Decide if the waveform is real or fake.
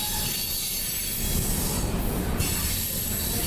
real